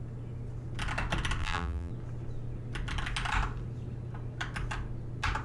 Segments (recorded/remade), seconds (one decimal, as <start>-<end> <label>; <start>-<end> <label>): 0.0-1.4 recorded; 1.4-1.9 remade; 1.9-5.4 recorded